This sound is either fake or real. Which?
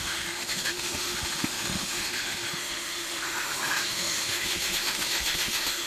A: fake